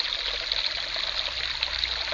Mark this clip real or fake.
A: real